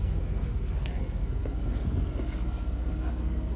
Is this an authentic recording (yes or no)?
no